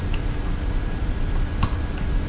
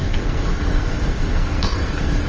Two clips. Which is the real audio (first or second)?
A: first